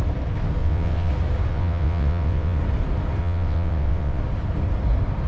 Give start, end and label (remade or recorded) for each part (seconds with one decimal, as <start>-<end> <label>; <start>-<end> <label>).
0.0-0.6 recorded; 0.6-1.1 remade; 1.1-1.5 recorded; 1.5-2.6 remade; 2.6-3.2 recorded; 3.2-4.2 remade; 4.2-5.3 recorded